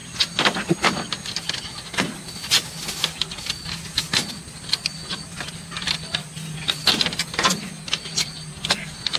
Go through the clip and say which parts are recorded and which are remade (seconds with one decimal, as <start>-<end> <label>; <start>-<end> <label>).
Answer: 0.0-4.3 recorded; 4.3-9.2 remade